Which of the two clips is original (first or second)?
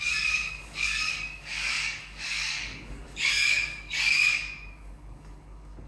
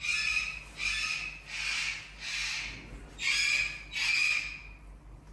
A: second